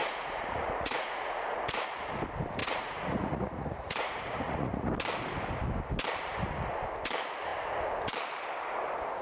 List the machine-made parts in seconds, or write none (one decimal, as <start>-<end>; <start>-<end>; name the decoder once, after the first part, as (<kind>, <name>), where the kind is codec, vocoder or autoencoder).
0.0-1.8 (vocoder, Vocos); 2.6-4.9